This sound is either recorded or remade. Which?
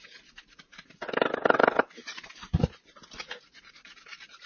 remade